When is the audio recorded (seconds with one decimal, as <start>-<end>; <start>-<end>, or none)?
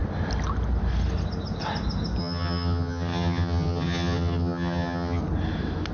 0.0-2.2; 5.2-5.9